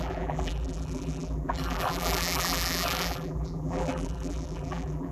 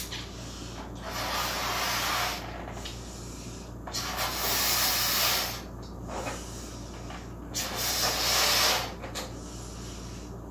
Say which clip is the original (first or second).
second